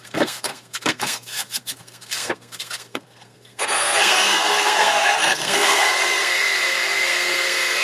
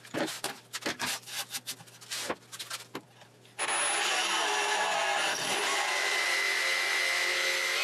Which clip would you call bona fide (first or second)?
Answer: second